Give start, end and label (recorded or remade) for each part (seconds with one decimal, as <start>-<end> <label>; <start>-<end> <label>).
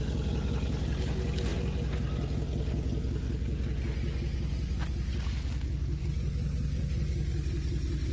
0.0-8.1 recorded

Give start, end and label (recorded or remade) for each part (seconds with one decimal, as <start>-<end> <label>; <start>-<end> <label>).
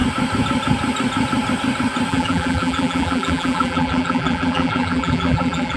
0.0-2.1 recorded; 2.1-5.8 remade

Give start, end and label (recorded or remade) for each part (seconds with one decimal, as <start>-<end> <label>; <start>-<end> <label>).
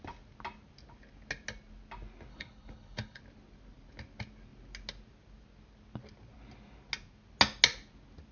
0.0-2.3 recorded; 2.3-3.2 remade; 3.2-8.3 recorded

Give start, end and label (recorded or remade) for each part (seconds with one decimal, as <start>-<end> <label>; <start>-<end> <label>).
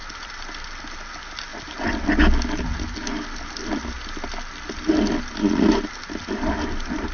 0.0-7.1 recorded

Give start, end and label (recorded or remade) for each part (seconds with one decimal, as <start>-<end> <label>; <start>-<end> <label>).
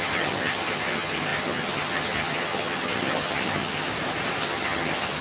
0.0-3.9 remade; 3.9-4.4 recorded; 4.4-5.2 remade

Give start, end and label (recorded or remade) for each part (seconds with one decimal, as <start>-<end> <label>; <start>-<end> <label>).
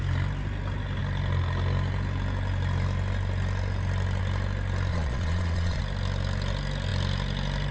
0.0-4.9 recorded; 4.9-5.8 remade; 5.8-7.7 recorded